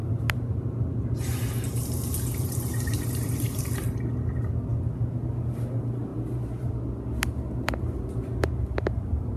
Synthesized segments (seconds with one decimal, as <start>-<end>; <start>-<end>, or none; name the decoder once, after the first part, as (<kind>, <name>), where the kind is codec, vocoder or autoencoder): 0.0-3.6 (vocoder, BigVGAN v2); 6.1-6.7